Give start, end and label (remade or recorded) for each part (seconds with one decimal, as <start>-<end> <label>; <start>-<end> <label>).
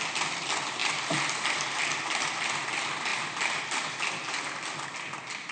0.0-5.5 recorded